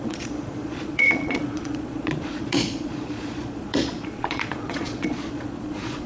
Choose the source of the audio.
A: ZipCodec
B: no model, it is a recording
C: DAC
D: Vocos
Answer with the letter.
D